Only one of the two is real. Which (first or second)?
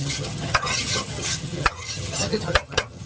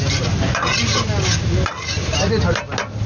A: second